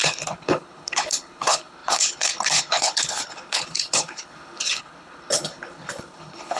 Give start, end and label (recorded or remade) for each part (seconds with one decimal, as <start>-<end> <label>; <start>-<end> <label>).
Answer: 0.0-6.6 remade